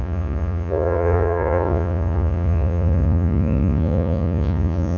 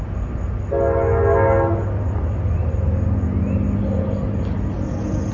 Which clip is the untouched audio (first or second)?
second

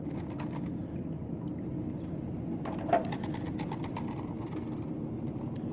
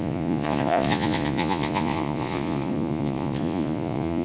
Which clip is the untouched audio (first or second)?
first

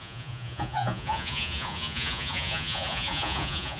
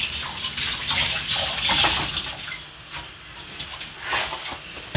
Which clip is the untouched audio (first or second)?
second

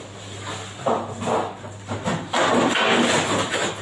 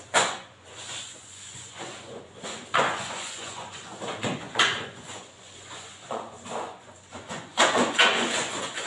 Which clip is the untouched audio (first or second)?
first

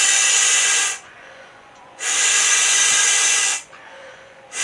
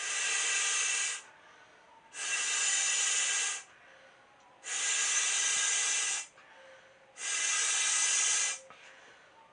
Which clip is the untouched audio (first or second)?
second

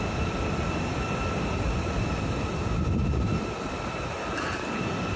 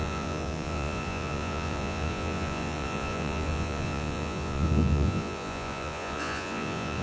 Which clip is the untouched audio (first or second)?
first